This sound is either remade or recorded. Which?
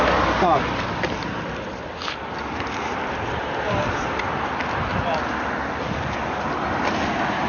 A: recorded